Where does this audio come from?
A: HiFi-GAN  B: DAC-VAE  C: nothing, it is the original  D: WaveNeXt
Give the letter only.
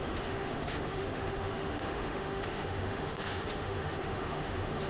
B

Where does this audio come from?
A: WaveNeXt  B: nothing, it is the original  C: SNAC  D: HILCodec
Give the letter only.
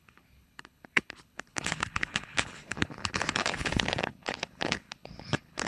D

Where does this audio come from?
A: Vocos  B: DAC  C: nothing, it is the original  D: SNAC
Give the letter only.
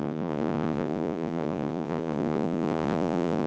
A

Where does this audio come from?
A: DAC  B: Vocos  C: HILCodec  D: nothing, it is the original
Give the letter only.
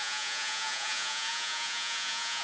B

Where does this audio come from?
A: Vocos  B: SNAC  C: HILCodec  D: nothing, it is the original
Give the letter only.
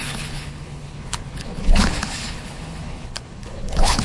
C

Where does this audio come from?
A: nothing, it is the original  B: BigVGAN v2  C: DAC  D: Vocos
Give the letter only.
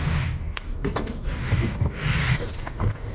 C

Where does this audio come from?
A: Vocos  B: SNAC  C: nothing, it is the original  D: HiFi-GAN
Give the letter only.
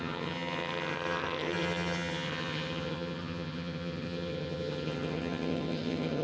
D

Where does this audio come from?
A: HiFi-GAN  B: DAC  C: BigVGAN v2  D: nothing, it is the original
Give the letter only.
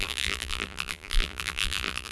C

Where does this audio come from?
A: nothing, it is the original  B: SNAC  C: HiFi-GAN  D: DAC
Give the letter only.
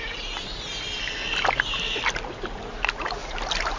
A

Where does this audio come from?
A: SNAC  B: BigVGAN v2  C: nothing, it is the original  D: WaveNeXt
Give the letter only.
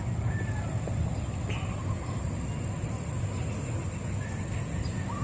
C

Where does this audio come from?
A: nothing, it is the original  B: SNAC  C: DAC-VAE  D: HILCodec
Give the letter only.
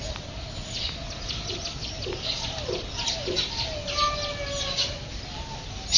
A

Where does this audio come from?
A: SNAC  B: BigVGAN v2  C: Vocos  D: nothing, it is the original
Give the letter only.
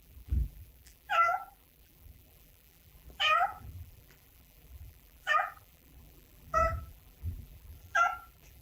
B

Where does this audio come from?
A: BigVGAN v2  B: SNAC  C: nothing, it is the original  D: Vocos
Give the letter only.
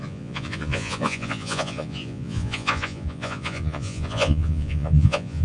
D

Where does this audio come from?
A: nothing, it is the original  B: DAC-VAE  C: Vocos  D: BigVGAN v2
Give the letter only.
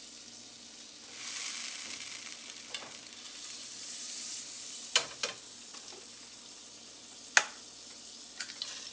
A